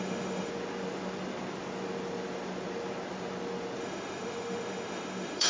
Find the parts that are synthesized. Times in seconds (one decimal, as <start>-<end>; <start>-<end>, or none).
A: 0.0-0.5; 3.8-5.5